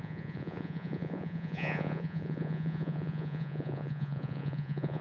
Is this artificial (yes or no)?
yes